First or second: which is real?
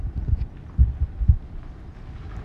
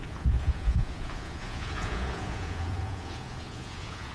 first